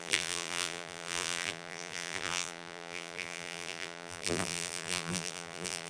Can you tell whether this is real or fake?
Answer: fake